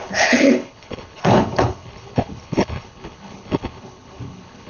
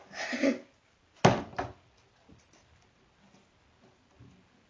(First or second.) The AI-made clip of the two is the first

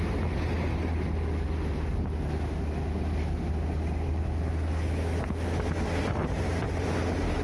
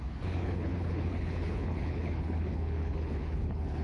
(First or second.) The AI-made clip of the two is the second